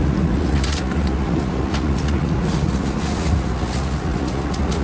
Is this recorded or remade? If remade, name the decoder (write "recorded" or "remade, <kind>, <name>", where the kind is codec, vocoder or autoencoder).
remade, vocoder, Vocos